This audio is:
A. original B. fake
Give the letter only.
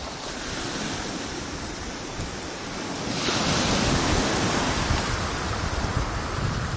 A